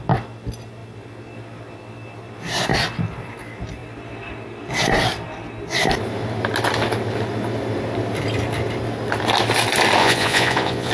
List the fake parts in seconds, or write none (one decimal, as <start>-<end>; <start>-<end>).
10.0-10.9